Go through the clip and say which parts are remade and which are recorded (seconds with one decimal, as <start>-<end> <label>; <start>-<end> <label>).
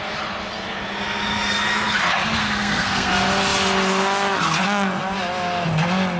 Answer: 0.0-2.4 recorded; 2.4-3.1 remade; 3.1-6.2 recorded